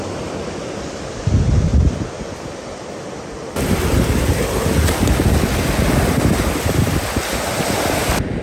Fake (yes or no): no